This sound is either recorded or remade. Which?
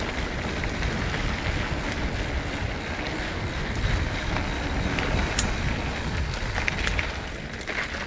recorded